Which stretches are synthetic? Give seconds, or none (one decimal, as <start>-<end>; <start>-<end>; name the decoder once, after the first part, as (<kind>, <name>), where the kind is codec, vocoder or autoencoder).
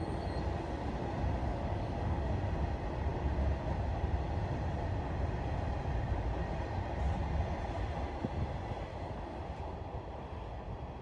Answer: 1.4-2.3 (codec, DAC); 8.9-9.4